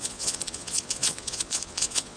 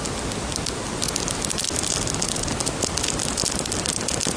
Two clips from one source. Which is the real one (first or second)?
second